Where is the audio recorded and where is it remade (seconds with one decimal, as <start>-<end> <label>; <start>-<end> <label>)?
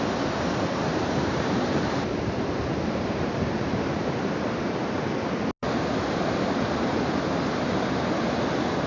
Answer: 0.0-0.9 recorded; 0.9-4.9 remade; 4.9-5.6 recorded; 5.6-7.4 remade; 7.4-8.9 recorded